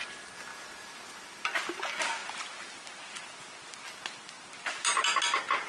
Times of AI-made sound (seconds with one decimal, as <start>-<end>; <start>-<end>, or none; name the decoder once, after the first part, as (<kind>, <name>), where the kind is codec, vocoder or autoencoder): none